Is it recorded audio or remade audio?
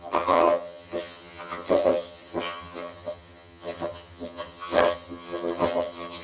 remade